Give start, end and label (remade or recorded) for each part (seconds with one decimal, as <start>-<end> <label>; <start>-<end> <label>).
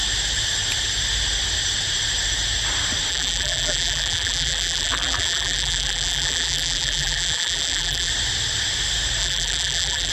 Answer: 0.0-3.1 recorded; 3.1-8.1 remade; 8.1-9.2 recorded; 9.2-10.1 remade